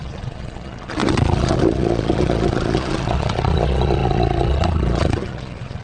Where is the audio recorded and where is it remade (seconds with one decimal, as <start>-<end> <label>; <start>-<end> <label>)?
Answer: 0.0-5.8 remade